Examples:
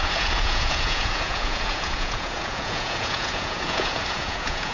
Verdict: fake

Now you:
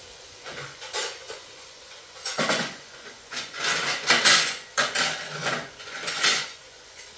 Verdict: fake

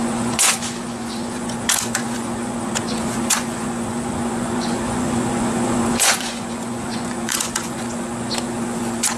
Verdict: fake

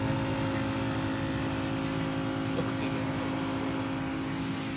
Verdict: real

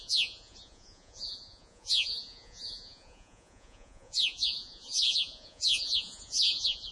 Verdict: fake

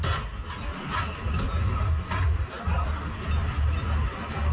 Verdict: real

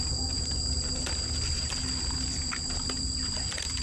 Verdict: real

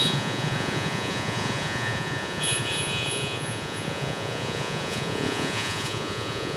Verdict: fake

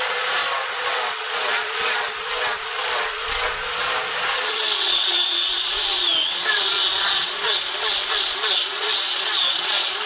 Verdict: fake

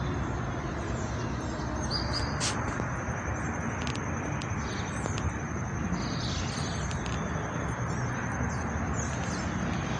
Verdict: real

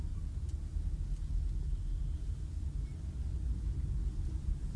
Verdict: real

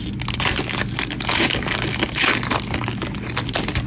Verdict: real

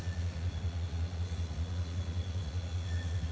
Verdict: fake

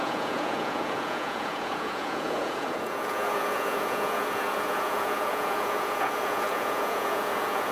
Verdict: fake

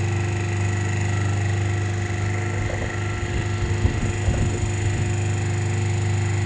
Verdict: real